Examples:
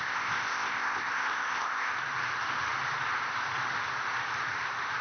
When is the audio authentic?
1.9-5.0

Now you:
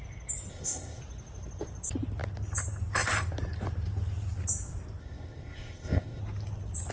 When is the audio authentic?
0.0-0.5; 1.0-5.0; 6.2-6.9